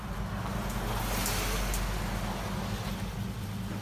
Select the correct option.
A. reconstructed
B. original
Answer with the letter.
B